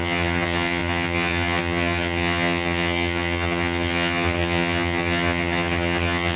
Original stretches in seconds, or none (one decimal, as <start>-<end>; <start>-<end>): none